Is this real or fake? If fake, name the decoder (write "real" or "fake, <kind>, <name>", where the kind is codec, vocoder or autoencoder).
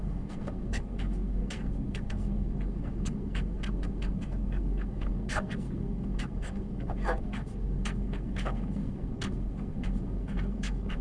fake, codec, SNAC